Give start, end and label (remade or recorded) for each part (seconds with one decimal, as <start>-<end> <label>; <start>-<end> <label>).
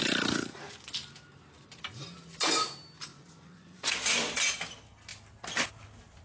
0.0-3.1 recorded; 3.1-3.9 remade; 3.9-6.2 recorded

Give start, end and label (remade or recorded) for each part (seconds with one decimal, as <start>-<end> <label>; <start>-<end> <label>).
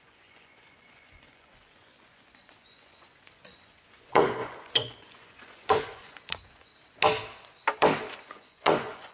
0.0-6.7 remade; 6.7-8.1 recorded; 8.1-9.1 remade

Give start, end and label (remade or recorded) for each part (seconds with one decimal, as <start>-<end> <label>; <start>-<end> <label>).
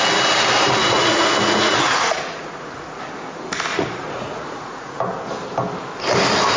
0.0-0.8 recorded; 0.8-3.0 remade; 3.0-3.7 recorded; 3.7-5.0 remade; 5.0-6.6 recorded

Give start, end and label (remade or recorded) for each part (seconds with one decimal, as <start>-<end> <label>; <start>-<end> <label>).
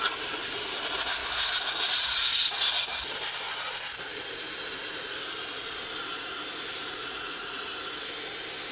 0.0-7.0 recorded; 7.0-7.7 remade; 7.7-8.7 recorded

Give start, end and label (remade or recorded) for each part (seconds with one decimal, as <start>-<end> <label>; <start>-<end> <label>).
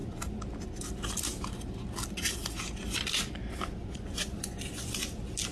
0.0-3.8 recorded; 3.8-4.9 remade; 4.9-5.5 recorded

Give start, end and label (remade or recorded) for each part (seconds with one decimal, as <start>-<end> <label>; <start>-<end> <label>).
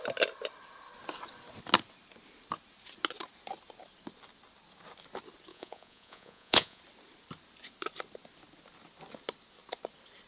0.0-5.5 recorded; 5.5-6.8 remade; 6.8-10.3 recorded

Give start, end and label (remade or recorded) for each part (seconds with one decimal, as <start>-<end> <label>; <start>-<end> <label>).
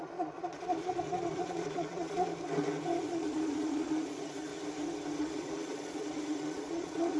0.0-2.3 remade; 2.3-3.0 recorded; 3.0-4.5 remade; 4.5-5.2 recorded; 5.2-7.2 remade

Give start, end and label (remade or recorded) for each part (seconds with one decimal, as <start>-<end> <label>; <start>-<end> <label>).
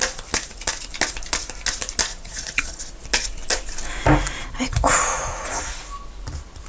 0.0-2.1 recorded; 2.1-2.8 remade; 2.8-4.4 recorded; 4.4-5.8 remade; 5.8-6.7 recorded